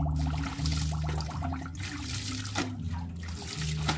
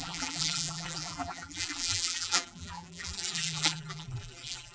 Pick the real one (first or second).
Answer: first